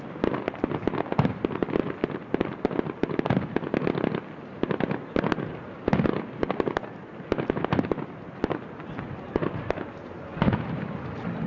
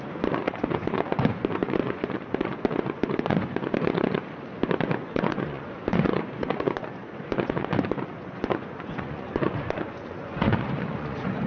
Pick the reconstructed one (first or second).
second